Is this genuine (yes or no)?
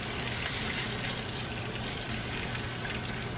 no